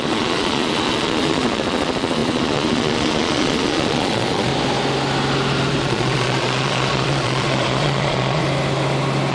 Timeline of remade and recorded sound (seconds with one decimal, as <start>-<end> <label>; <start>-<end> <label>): 0.0-4.5 remade; 4.5-5.8 recorded; 5.8-8.4 remade; 8.4-9.3 recorded